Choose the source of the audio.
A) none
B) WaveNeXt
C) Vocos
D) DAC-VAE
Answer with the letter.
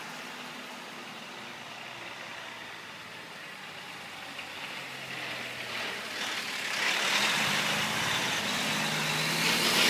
A